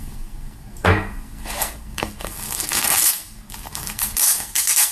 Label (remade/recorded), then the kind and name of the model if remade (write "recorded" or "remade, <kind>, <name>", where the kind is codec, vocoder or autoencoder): remade, codec, SNAC